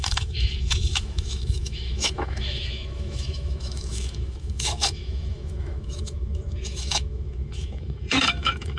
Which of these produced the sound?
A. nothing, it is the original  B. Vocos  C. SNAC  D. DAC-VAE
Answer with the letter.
D